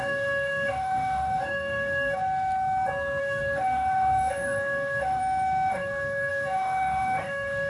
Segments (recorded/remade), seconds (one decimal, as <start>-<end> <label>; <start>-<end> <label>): 0.0-2.2 remade; 2.2-3.2 recorded; 3.2-5.2 remade; 5.2-5.7 recorded; 5.7-7.7 remade